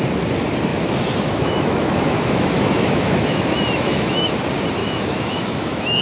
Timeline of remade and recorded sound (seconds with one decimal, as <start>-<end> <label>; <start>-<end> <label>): 0.0-0.7 recorded; 0.7-4.3 remade; 4.3-4.8 recorded; 4.8-6.0 remade